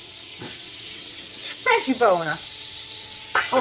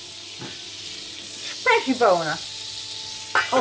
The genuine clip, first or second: second